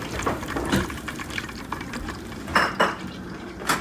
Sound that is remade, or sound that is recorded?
remade